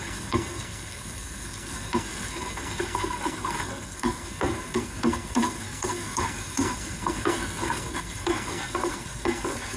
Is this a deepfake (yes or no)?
yes